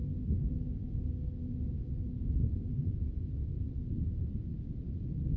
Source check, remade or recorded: recorded